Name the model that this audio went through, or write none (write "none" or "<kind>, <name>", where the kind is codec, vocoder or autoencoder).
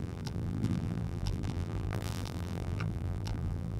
vocoder, BigVGAN v2